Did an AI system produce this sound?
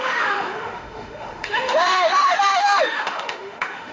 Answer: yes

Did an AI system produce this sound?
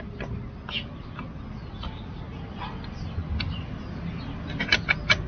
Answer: no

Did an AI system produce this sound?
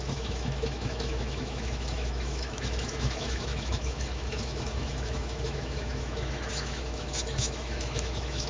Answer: yes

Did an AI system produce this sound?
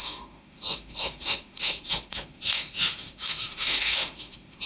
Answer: yes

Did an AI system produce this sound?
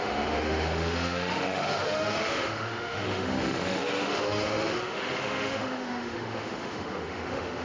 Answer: yes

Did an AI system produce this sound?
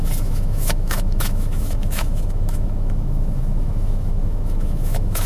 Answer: yes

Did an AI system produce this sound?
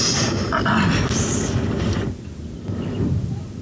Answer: no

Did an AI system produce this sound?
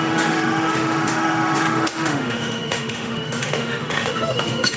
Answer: yes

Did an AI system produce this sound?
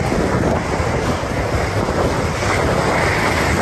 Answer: no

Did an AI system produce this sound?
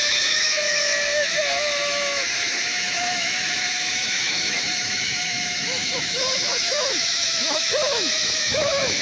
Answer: yes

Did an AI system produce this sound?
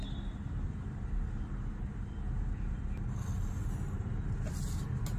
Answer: no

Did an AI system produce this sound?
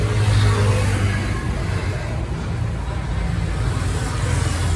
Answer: no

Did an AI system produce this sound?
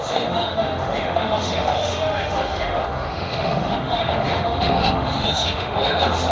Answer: yes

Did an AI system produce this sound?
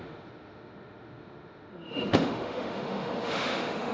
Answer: yes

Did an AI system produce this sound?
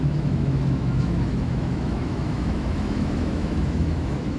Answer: yes